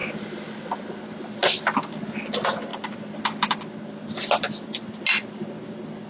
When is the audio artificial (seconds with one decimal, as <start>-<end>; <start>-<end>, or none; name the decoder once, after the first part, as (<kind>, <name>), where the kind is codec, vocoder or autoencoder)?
none